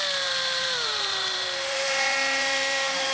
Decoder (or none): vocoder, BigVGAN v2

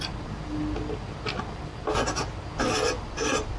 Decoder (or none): none